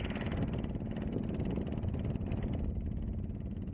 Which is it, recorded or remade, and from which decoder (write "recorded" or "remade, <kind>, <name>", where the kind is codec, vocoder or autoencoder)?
recorded